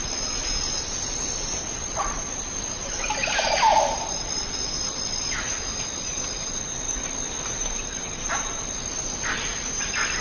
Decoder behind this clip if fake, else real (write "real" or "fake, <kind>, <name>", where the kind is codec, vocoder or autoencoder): real